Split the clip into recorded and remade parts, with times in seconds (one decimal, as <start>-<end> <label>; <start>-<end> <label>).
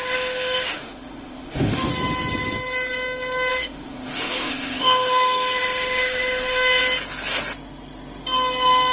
0.0-1.9 remade; 1.9-3.5 recorded; 3.5-6.8 remade; 6.8-8.9 recorded